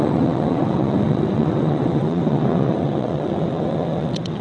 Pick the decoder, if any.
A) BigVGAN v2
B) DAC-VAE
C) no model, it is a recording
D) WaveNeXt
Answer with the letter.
D